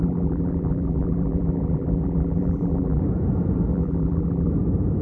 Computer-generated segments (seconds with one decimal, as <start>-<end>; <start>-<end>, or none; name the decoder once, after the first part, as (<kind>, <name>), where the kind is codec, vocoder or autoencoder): 0.0-3.0 (vocoder, BigVGAN v2); 3.7-4.5